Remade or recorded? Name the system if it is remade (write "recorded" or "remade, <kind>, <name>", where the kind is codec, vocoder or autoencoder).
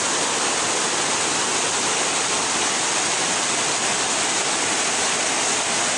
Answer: recorded